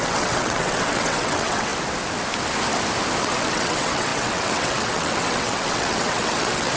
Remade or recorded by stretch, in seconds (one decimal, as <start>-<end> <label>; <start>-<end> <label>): 0.0-1.7 remade; 1.7-3.2 recorded; 3.2-6.8 remade